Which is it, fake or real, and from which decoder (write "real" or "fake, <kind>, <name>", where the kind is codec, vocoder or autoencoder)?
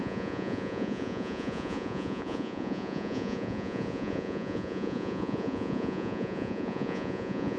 fake, vocoder, Vocos